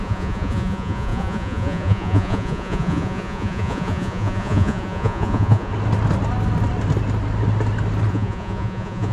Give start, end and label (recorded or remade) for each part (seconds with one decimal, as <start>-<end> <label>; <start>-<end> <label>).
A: 0.0-5.7 remade; 5.7-8.1 recorded; 8.1-9.1 remade